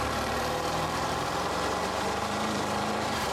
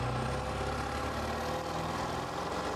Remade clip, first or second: first